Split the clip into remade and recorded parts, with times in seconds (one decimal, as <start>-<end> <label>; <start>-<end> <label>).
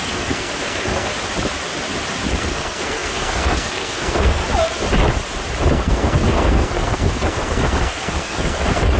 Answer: 0.0-1.1 remade; 1.1-2.3 recorded; 2.3-4.4 remade; 4.4-5.7 recorded; 5.7-9.0 remade